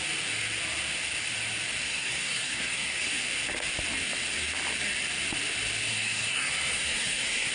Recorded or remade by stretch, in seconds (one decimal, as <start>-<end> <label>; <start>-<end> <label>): 0.0-1.8 recorded; 1.8-3.2 remade; 3.2-5.9 recorded; 5.9-7.5 remade